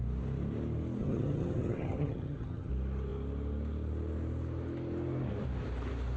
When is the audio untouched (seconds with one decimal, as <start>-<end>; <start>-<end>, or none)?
0.0-1.0; 2.7-6.2